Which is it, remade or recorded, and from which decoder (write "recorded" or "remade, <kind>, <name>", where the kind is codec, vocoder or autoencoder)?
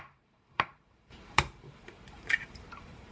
remade, vocoder, BigVGAN v2